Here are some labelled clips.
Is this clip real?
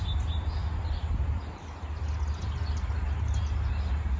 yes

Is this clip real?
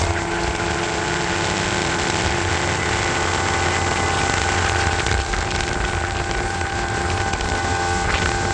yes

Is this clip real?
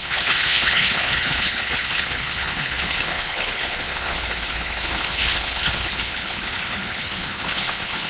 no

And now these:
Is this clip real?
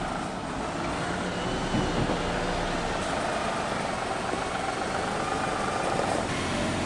yes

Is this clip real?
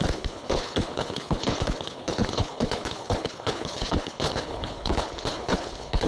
no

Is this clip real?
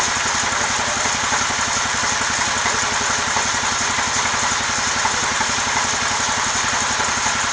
yes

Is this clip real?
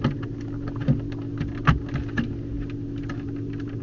yes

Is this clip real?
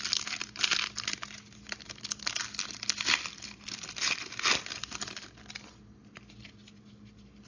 yes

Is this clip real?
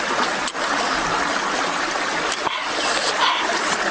yes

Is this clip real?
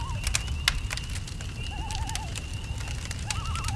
yes